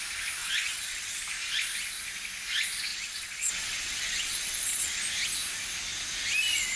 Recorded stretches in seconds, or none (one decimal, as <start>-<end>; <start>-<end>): 0.0-0.4; 1.2-2.9; 5.0-6.8